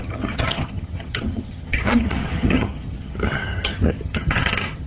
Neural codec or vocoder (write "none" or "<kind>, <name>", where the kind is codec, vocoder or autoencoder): vocoder, HiFi-GAN